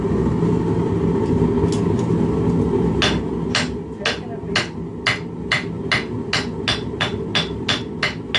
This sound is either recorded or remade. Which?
recorded